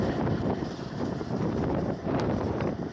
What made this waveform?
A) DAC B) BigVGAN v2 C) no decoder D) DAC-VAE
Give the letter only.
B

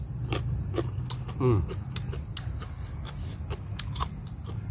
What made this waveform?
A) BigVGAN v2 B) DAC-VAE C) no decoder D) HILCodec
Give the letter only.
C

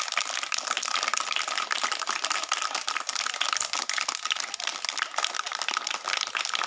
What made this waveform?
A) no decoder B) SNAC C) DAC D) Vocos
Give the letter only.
A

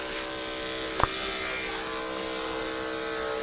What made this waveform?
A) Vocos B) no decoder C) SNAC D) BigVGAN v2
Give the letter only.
B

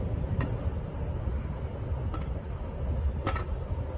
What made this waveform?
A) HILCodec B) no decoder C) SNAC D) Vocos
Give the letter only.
B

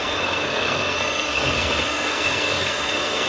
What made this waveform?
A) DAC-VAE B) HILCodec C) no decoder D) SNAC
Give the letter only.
D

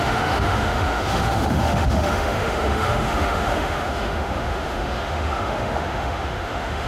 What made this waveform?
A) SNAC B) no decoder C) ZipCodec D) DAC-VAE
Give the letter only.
D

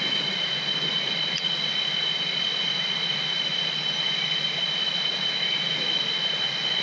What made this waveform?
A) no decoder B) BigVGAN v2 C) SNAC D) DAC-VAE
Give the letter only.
A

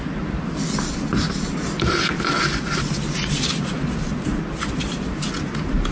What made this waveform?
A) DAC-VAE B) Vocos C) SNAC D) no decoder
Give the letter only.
D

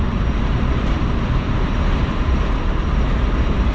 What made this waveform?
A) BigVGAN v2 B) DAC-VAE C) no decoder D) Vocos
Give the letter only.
A